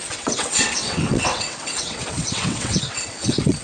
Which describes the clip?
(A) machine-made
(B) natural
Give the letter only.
A